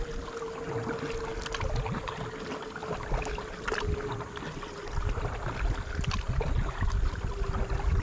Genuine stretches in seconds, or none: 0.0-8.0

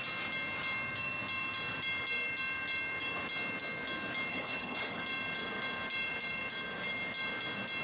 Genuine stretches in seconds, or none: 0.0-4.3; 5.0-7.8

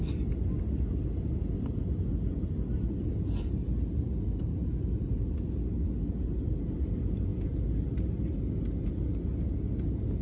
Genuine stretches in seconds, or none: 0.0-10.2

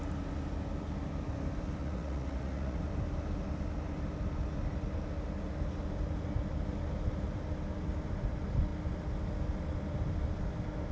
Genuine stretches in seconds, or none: 0.0-1.8; 2.8-10.9

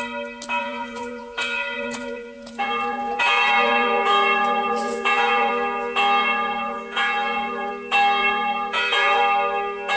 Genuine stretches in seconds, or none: 0.0-0.6; 5.5-6.2; 7.7-8.2; 9.2-10.0